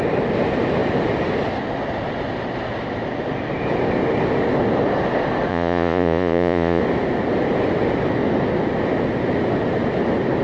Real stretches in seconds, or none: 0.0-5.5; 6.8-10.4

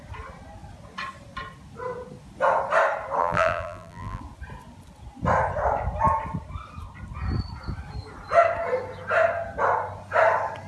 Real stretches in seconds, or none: 0.0-3.2; 4.2-10.7

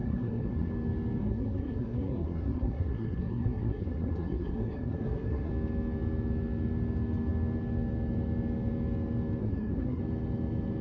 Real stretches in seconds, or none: 0.7-1.2; 5.5-9.4; 10.0-10.8

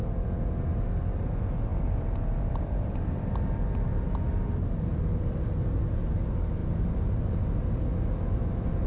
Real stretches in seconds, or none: 0.0-1.7; 4.3-4.9; 5.7-8.9

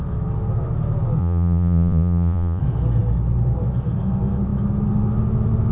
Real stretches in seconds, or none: 0.0-1.2; 2.6-5.7

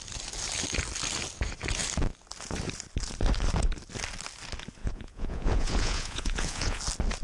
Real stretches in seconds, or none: 0.0-4.8; 6.8-7.2